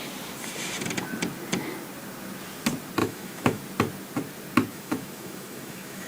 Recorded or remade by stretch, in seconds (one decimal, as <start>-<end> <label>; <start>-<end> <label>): 0.0-3.0 recorded; 3.0-3.6 remade; 3.6-4.7 recorded; 4.7-6.1 remade